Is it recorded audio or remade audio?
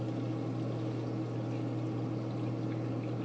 recorded